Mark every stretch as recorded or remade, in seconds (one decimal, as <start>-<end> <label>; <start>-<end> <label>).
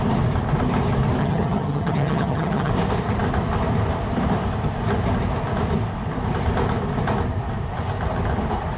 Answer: 0.0-1.2 recorded; 1.2-2.7 remade; 2.7-8.8 recorded